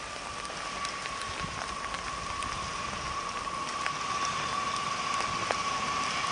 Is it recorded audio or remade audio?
recorded